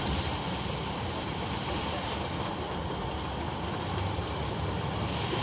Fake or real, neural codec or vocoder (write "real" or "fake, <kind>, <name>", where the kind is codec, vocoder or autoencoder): fake, vocoder, BigVGAN v2